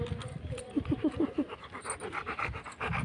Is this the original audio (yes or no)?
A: yes